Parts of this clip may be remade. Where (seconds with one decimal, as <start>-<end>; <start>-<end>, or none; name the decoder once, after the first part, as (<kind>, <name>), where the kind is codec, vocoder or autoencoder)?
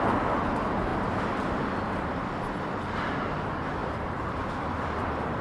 0.9-2.2 (vocoder, BigVGAN v2); 3.8-4.7